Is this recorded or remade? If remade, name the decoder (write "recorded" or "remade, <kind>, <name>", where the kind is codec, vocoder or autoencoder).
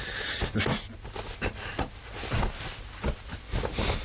recorded